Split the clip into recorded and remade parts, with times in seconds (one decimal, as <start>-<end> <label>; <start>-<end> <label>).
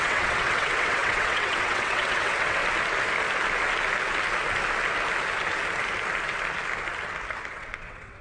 0.0-2.6 remade; 2.6-7.5 recorded; 7.5-8.2 remade